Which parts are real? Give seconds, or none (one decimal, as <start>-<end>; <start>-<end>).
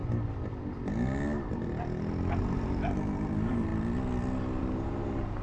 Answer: 0.0-2.4; 3.7-4.6